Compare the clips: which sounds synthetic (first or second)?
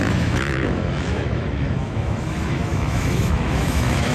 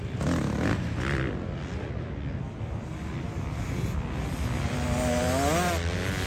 first